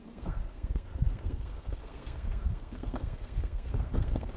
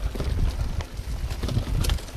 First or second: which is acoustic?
second